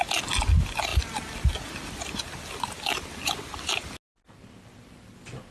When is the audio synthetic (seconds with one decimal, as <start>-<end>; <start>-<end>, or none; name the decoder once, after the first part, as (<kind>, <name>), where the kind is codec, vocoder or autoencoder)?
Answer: none

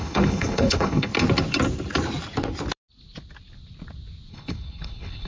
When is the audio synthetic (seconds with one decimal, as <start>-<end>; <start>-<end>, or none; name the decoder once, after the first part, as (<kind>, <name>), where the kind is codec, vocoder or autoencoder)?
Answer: 0.0-1.1 (codec, HILCodec); 4.3-5.3